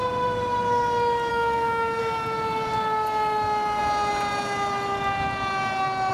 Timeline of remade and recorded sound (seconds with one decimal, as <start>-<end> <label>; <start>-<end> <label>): 0.0-1.3 recorded; 1.3-2.0 remade; 2.0-6.1 recorded